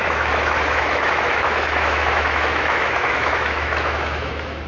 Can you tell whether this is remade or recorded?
remade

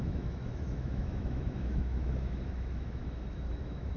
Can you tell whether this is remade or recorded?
remade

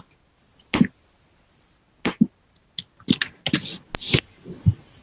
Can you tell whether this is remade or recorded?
recorded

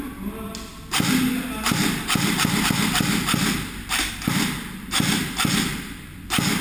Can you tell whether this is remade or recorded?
recorded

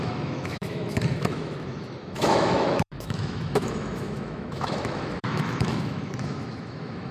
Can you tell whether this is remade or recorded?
remade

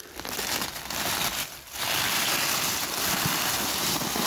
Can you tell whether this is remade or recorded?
recorded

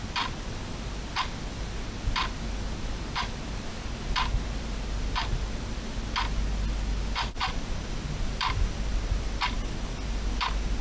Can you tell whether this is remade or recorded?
recorded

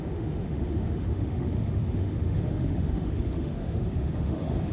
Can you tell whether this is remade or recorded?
remade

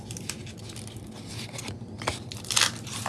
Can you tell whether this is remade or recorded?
recorded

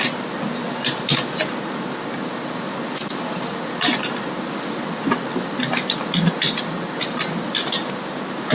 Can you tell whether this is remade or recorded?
recorded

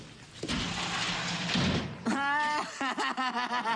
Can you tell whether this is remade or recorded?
recorded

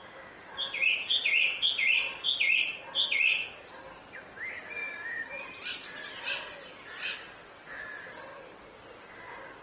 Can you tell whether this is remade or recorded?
recorded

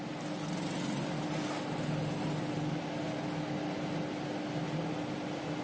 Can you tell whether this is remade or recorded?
recorded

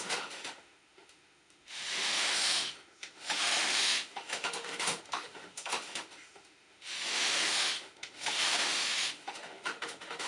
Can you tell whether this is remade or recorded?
remade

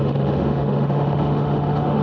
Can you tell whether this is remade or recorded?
remade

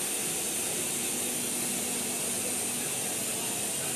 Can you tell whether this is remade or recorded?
recorded